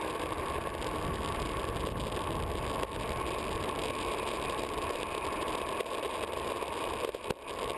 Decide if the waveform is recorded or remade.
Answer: recorded